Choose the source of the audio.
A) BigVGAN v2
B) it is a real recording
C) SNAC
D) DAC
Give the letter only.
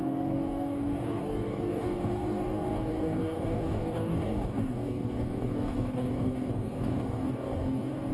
D